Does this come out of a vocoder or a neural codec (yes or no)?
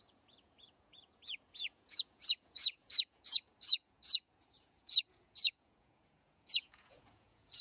yes